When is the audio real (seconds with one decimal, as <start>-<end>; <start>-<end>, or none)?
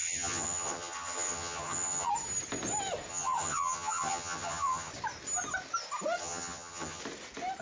2.1-3.1; 4.9-6.2; 7.0-7.6